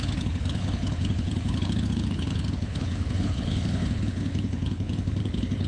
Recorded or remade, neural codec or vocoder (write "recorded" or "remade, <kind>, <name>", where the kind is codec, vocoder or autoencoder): remade, codec, HILCodec